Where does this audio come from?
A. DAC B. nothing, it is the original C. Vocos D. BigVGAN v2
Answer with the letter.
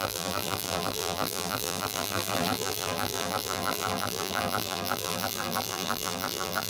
D